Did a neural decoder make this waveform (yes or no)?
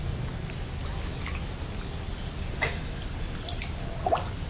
no